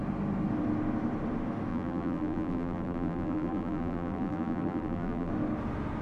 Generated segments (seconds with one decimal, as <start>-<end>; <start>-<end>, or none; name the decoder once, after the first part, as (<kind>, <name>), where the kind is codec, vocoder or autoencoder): 1.7-5.3 (vocoder, BigVGAN v2)